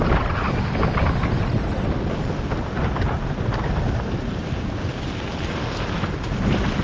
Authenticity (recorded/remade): recorded